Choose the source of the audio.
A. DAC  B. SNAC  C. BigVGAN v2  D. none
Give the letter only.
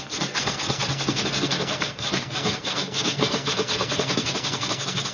B